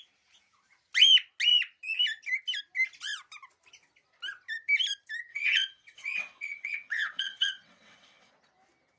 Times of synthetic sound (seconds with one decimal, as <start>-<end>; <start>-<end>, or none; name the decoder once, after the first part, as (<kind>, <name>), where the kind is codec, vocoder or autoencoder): 5.3-8.3 (vocoder, WaveNeXt)